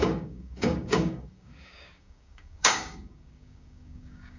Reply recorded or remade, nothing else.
remade